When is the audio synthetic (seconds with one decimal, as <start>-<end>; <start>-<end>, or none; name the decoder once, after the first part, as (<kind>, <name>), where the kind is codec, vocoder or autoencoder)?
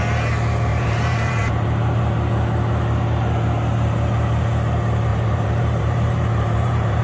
0.7-2.0 (vocoder, BigVGAN v2); 5.1-7.0